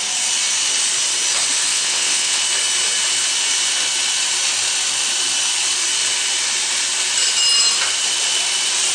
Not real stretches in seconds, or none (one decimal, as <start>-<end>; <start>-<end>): 1.7-2.4